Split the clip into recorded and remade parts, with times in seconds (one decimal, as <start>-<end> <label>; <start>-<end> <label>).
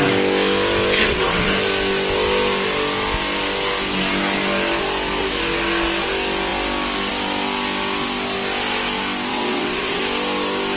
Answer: 0.0-1.0 recorded; 1.0-1.5 remade; 1.5-9.3 recorded; 9.3-10.0 remade; 10.0-10.8 recorded